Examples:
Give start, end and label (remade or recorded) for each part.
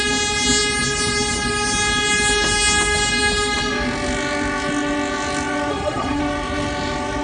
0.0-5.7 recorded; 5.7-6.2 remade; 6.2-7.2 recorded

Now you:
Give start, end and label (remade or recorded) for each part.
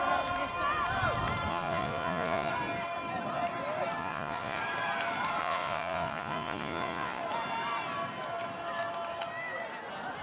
0.0-1.5 recorded; 1.5-2.5 remade; 2.5-4.0 recorded; 4.0-4.6 remade; 4.6-5.4 recorded; 5.4-7.2 remade; 7.2-10.2 recorded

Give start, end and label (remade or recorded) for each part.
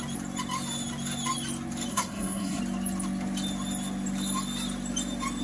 0.0-1.9 recorded; 1.9-2.6 remade; 2.6-5.4 recorded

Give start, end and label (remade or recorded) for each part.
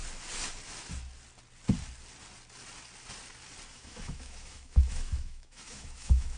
0.0-3.7 recorded; 3.7-6.4 remade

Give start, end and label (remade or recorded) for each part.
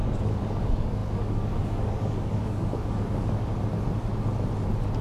0.0-3.5 remade; 3.5-5.0 recorded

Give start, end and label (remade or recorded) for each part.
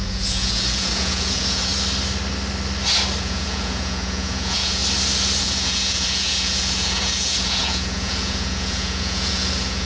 0.0-1.7 remade; 1.7-3.2 recorded; 3.2-4.8 remade; 4.8-5.4 recorded; 5.4-9.8 remade